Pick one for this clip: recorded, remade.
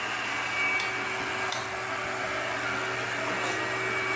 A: recorded